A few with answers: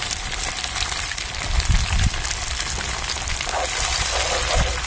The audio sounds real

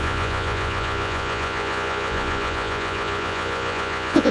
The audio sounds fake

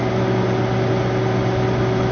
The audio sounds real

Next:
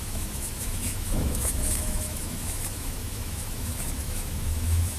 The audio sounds fake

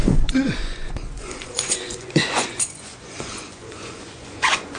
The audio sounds fake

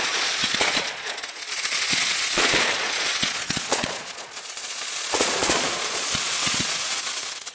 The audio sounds fake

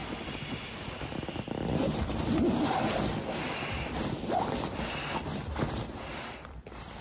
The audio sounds fake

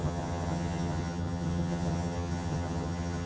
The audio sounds fake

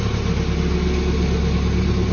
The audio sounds real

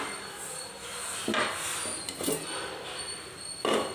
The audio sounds real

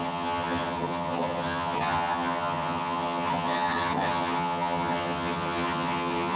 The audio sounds fake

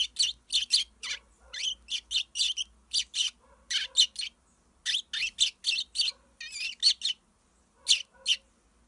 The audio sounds real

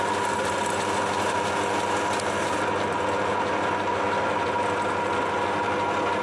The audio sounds real